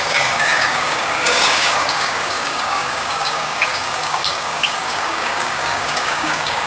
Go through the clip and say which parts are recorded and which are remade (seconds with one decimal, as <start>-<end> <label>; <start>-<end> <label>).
0.0-6.7 remade